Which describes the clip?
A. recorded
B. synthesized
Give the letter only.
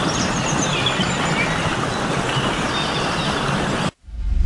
A